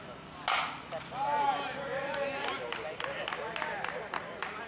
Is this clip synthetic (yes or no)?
no